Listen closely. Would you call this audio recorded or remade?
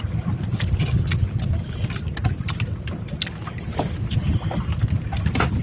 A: recorded